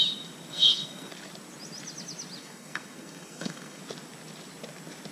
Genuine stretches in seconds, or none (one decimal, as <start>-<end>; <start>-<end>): 0.0-0.5; 1.1-2.4; 3.8-5.1